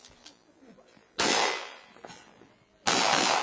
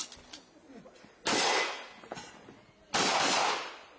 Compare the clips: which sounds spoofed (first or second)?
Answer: first